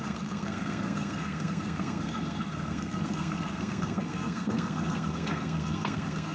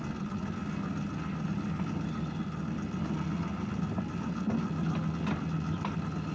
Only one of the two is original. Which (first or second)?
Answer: second